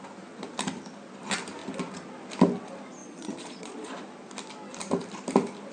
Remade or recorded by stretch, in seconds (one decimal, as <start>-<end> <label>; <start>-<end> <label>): 0.0-3.0 recorded; 3.0-3.9 remade; 3.9-5.7 recorded